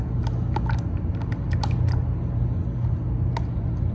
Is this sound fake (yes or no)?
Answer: no